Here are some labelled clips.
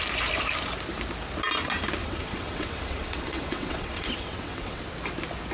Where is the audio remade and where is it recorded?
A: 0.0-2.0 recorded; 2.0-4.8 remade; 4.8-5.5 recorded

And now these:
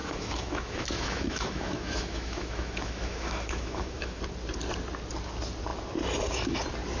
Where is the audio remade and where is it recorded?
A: 0.0-4.2 remade; 4.2-7.0 recorded

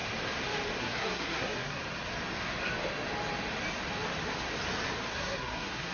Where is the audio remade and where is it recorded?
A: 0.0-0.8 recorded; 0.8-1.8 remade; 1.8-5.1 recorded; 5.1-5.9 remade

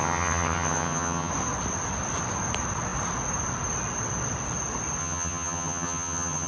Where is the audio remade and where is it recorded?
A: 0.0-1.3 remade; 1.3-5.0 recorded; 5.0-6.5 remade

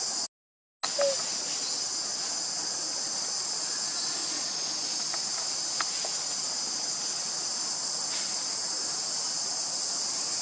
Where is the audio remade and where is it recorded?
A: 0.0-4.2 recorded; 4.2-4.7 remade; 4.7-10.4 recorded

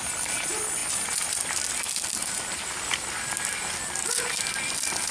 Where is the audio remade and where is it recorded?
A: 0.0-5.1 recorded

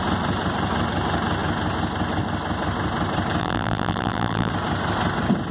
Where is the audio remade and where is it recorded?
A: 0.0-3.4 recorded; 3.4-4.5 remade; 4.5-5.5 recorded